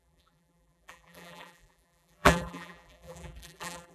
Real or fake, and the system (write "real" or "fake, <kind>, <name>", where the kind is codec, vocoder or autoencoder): fake, vocoder, BigVGAN v2